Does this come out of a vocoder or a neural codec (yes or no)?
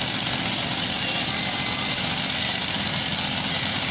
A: no